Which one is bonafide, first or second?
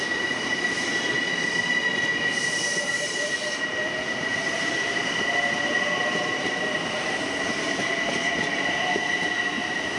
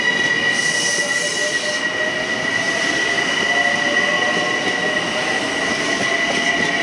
second